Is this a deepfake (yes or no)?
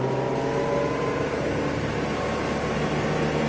no